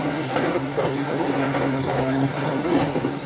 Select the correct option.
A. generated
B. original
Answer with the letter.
A